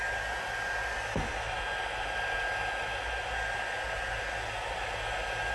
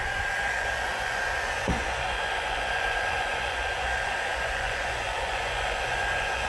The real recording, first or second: first